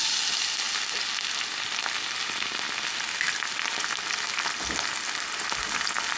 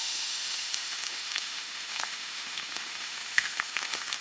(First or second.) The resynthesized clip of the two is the second